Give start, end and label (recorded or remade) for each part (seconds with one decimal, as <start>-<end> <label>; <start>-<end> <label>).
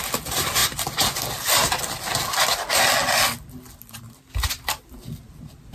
0.0-5.7 recorded